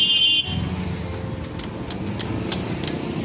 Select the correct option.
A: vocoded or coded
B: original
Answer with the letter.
B